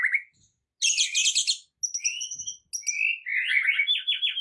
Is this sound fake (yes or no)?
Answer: no